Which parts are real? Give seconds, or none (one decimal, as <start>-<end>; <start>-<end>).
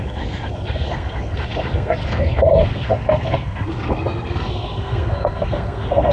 none